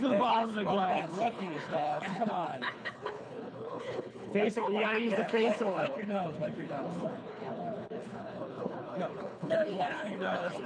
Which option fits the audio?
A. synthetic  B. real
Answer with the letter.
A